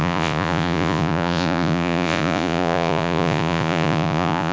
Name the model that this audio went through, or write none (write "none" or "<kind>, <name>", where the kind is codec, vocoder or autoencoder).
vocoder, Vocos